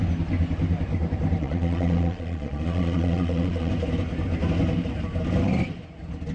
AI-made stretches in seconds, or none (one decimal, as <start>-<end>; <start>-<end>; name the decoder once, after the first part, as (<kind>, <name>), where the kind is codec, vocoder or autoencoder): 1.4-3.7 (vocoder, Vocos)